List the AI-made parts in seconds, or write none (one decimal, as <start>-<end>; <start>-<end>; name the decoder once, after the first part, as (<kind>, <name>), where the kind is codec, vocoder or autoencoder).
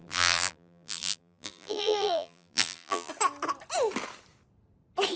0.0-3.1 (vocoder, BigVGAN v2)